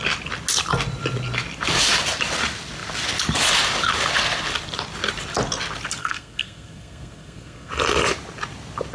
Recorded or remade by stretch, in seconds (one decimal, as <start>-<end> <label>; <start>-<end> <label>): 0.0-6.0 recorded; 6.0-7.7 remade; 7.7-8.9 recorded